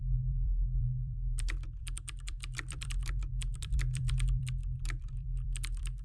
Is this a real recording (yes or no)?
no